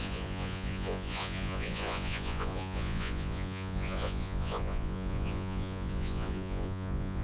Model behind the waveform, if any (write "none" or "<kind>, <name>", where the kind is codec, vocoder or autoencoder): vocoder, Vocos